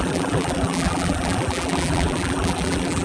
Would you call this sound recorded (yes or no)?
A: no